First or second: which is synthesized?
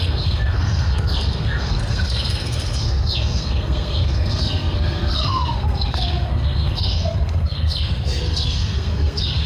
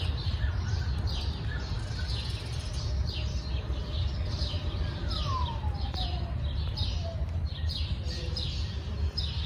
first